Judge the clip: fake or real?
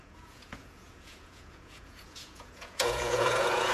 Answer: fake